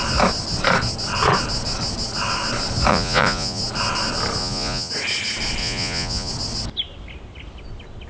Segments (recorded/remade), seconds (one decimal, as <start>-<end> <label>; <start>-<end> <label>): 0.0-2.9 recorded; 2.9-3.6 remade; 3.6-4.4 recorded; 4.4-4.9 remade; 4.9-5.6 recorded; 5.6-6.3 remade; 6.3-8.1 recorded